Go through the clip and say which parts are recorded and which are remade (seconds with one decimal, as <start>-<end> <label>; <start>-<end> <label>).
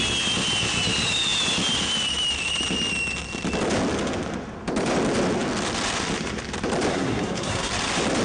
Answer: 0.0-6.9 recorded; 6.9-7.7 remade; 7.7-8.2 recorded